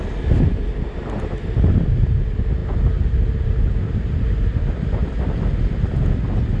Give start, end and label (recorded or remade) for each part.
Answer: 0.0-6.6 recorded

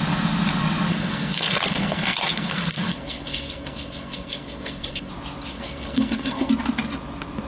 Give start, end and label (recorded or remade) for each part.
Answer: 0.0-0.9 recorded; 0.9-5.1 remade; 5.1-5.5 recorded; 5.5-6.5 remade; 6.5-7.5 recorded

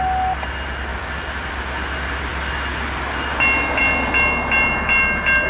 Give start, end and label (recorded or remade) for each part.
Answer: 0.0-0.9 recorded; 0.9-1.5 remade; 1.5-5.5 recorded

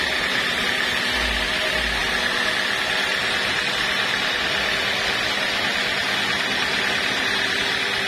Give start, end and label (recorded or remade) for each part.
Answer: 0.0-8.1 recorded

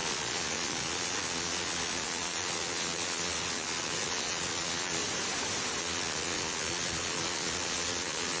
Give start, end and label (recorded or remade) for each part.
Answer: 0.0-5.0 remade; 5.0-5.8 recorded; 5.8-8.4 remade